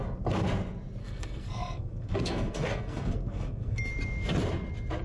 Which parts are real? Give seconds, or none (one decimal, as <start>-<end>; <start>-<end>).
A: 0.0-1.0; 3.9-5.0